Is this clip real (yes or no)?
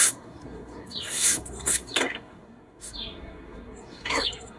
no